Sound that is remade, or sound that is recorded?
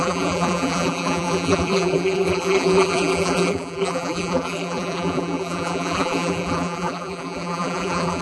remade